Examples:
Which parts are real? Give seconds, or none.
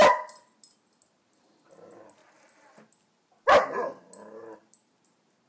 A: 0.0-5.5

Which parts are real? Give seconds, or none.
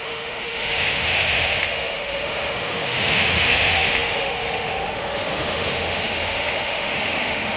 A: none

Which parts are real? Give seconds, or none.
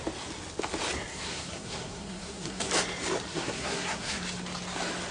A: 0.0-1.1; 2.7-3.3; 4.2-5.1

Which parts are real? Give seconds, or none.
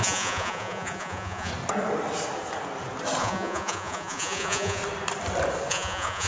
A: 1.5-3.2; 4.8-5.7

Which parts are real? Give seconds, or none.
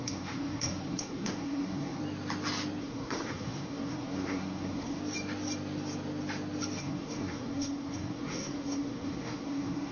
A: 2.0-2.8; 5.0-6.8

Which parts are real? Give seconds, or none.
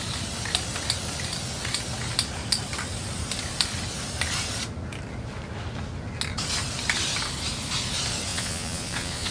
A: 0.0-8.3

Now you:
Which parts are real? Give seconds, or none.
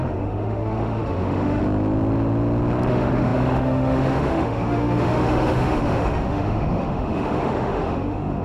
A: 1.6-2.9